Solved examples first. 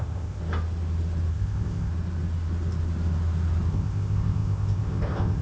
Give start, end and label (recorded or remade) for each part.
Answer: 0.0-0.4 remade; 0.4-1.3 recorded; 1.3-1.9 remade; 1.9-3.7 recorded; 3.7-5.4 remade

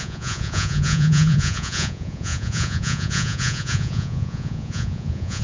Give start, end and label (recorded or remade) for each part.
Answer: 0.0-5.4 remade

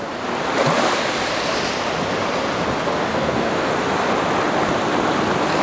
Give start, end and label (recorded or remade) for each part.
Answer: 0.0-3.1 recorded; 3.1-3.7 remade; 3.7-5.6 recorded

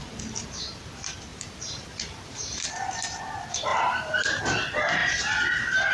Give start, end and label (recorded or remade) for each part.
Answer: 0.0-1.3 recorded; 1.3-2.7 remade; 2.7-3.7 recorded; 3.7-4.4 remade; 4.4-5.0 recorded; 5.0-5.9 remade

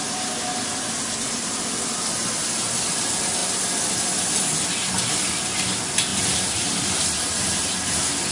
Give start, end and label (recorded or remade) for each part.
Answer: 0.0-6.1 recorded; 6.1-7.0 remade; 7.0-8.3 recorded

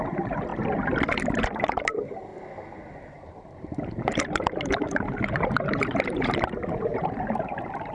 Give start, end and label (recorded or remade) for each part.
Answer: 0.0-0.5 remade; 0.5-1.3 recorded; 1.3-2.3 remade; 2.3-2.9 recorded; 2.9-7.9 remade

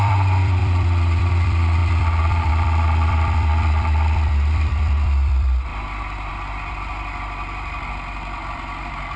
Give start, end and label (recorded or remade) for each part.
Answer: 0.0-5.7 remade; 5.7-6.3 recorded; 6.3-9.2 remade

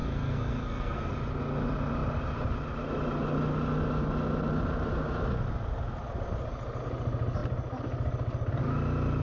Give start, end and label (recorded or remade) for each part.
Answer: 0.0-1.1 remade; 1.1-9.2 recorded